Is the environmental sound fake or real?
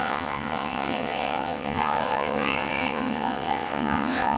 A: fake